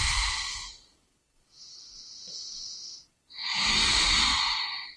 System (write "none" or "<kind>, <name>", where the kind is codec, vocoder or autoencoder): none